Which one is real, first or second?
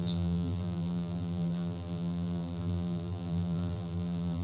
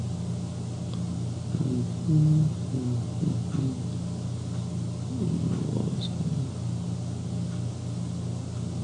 second